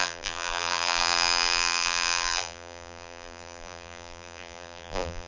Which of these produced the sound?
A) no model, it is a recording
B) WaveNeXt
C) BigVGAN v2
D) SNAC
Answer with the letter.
C